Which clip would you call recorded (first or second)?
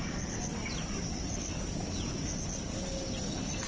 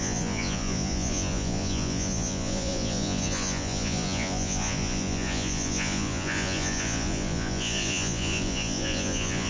first